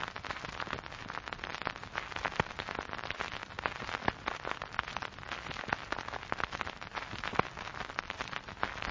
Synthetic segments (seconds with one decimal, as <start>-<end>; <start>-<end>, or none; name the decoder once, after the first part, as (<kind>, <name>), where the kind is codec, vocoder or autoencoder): none